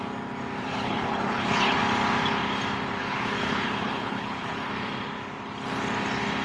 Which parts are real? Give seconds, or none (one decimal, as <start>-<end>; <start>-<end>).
0.0-0.6; 1.8-3.0; 4.7-6.4